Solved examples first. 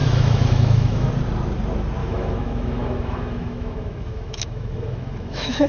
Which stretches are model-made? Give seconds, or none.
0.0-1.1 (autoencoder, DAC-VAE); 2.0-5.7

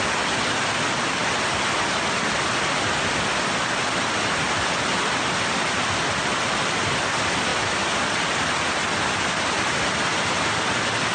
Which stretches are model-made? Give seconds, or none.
none

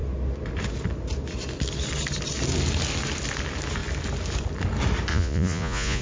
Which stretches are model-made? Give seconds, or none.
5.1-6.0 (vocoder, Vocos)

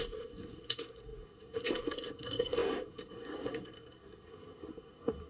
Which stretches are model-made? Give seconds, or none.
0.0-5.3 (codec, SNAC)

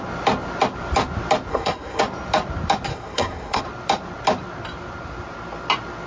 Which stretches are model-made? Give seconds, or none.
1.5-2.0 (codec, SNAC); 2.9-3.6

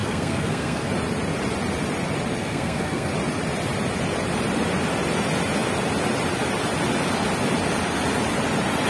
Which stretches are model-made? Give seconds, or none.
0.0-0.9 (codec, SNAC); 2.4-3.1

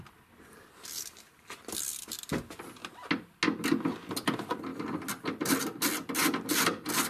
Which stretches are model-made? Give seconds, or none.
none